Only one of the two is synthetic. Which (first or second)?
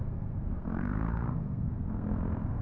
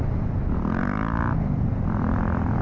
first